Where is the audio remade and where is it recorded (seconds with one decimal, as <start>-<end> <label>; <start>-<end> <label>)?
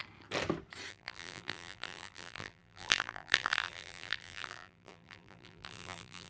0.0-0.9 recorded; 0.9-6.3 remade